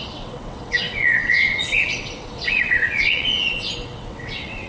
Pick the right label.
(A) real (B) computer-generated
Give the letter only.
B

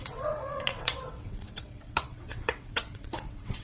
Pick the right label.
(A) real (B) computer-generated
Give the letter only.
B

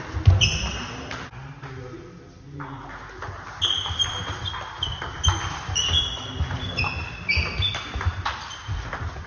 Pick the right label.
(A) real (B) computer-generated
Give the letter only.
A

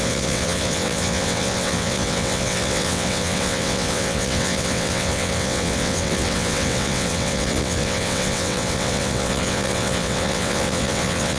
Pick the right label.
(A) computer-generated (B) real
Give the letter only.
A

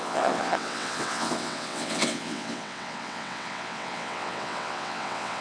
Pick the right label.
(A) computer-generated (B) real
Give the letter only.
A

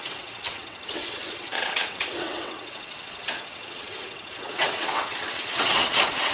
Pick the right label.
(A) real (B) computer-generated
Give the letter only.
B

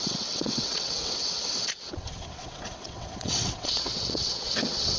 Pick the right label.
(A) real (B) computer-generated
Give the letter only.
B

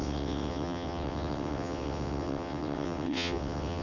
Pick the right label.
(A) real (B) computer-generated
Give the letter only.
B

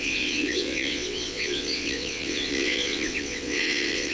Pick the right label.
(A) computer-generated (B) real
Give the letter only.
A